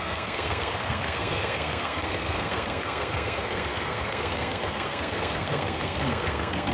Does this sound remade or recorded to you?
remade